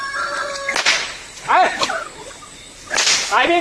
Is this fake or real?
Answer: real